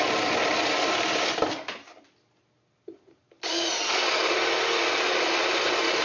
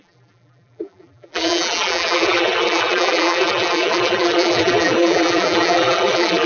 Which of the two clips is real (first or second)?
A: first